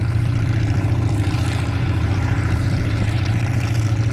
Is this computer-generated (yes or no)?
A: yes